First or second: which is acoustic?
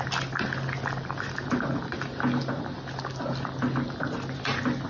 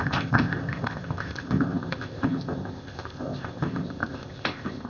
first